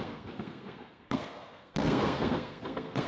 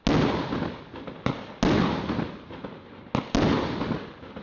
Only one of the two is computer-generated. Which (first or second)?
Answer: first